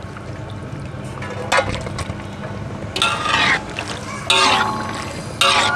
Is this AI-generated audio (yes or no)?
no